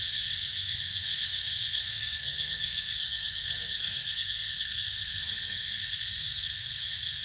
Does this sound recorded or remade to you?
remade